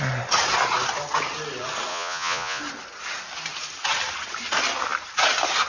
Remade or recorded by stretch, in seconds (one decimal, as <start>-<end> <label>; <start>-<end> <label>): 0.0-1.9 recorded; 1.9-2.6 remade; 2.6-5.7 recorded